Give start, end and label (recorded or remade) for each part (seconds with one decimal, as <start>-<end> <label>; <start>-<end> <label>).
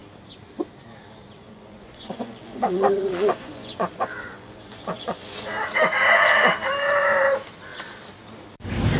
0.0-1.4 recorded; 1.4-5.5 remade; 5.5-9.0 recorded